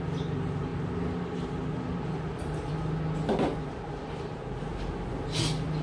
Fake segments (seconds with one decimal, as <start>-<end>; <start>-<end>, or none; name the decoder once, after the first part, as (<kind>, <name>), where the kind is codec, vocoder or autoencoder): none